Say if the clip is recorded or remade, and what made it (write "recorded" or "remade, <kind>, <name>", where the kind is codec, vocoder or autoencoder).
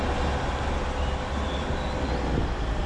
recorded